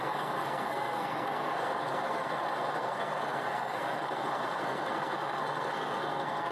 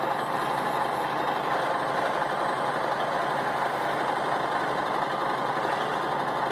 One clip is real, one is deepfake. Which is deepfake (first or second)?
first